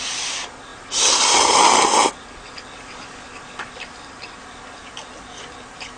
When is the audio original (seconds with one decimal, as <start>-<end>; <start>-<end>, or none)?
0.0-6.0